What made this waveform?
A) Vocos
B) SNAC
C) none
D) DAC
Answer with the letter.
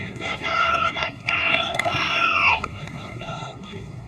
B